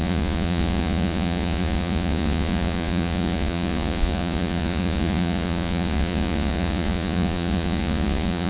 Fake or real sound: fake